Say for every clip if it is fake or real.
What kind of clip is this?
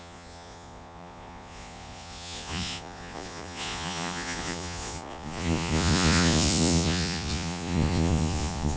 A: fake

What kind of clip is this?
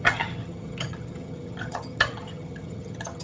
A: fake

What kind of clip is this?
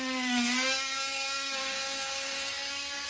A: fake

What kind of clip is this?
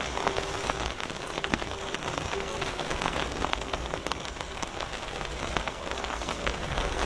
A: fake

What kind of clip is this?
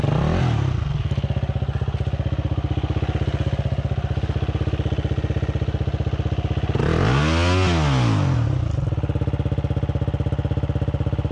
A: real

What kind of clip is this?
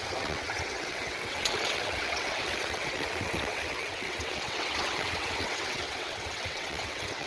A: fake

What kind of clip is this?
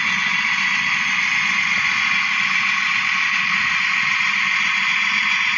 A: real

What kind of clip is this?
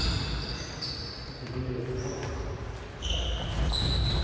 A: real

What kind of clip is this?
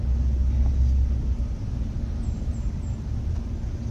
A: real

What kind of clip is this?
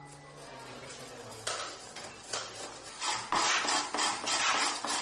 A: real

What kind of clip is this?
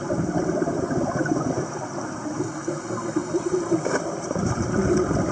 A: real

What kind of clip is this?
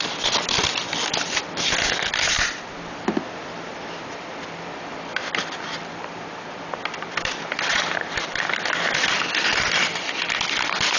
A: fake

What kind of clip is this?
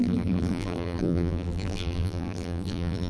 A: fake